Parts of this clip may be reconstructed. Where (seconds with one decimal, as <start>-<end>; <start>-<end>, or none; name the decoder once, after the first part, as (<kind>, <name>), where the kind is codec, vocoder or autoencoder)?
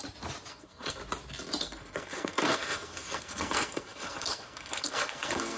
0.5-1.0 (codec, SNAC); 1.6-5.6